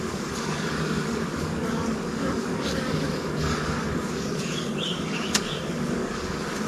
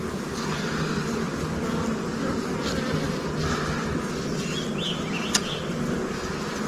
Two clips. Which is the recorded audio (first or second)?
second